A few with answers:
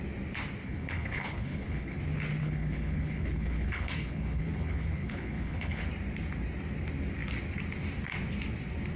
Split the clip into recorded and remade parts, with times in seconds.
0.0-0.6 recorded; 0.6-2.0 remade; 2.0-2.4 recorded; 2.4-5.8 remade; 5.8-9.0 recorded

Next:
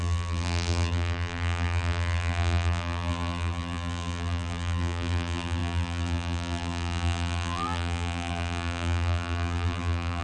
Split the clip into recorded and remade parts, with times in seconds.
0.0-10.2 remade

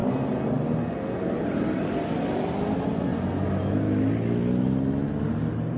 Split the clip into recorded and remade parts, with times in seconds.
0.0-5.8 recorded